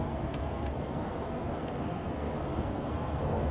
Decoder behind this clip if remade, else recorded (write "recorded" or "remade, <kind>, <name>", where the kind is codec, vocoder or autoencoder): remade, codec, SNAC